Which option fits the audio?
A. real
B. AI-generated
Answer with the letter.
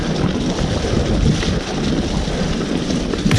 A